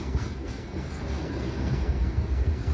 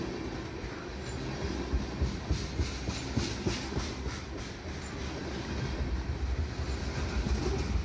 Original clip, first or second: second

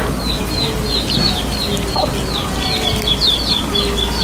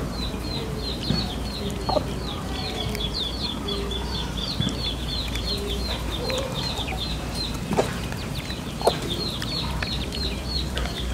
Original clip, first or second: first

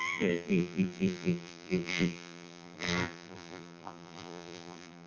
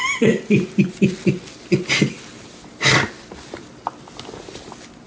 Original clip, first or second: second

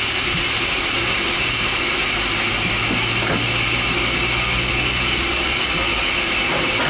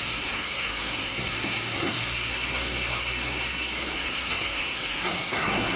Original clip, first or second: first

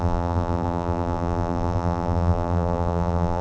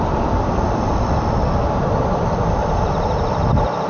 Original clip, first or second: second